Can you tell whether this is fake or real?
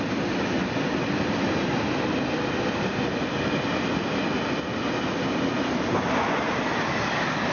real